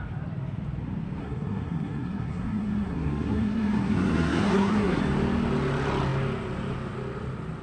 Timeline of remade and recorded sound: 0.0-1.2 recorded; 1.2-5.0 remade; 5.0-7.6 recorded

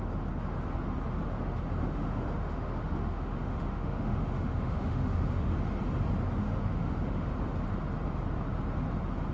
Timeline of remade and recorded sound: 0.0-1.8 recorded; 1.8-5.5 remade; 5.5-6.4 recorded; 6.4-7.3 remade; 7.3-9.3 recorded

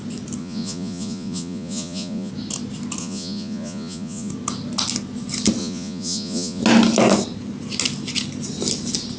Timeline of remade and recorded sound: 0.0-0.4 recorded; 0.4-2.3 remade; 2.3-3.0 recorded; 3.0-4.3 remade; 4.3-5.6 recorded; 5.6-6.6 remade; 6.6-9.2 recorded

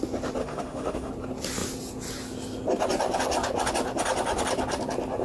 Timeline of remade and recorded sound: 0.0-0.4 recorded; 0.4-1.1 remade; 1.1-5.2 recorded

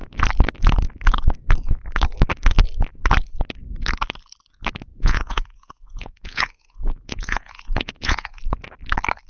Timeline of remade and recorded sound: 0.0-4.9 recorded; 4.9-8.4 remade; 8.4-9.3 recorded